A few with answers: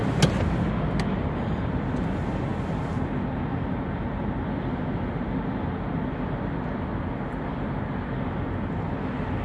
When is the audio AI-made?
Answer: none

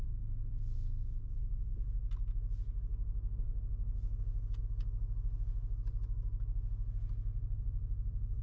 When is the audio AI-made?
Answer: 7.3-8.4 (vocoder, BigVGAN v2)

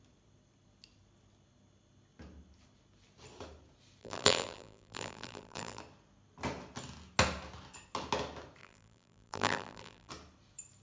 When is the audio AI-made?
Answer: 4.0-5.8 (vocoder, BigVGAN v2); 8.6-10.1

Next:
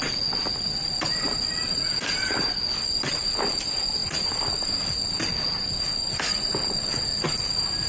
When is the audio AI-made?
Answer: 1.5-2.6 (vocoder, BigVGAN v2)

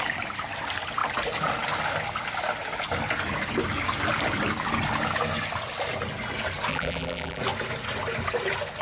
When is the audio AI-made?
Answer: 6.7-7.4 (vocoder, BigVGAN v2)

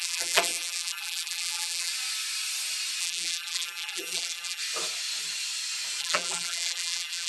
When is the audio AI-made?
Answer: 0.0-1.9 (vocoder, BigVGAN v2); 3.0-4.6; 6.0-7.3